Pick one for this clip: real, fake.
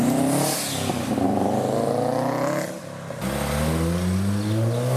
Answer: real